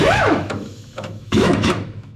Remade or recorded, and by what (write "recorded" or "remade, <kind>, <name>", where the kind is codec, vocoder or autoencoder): remade, autoencoder, DAC-VAE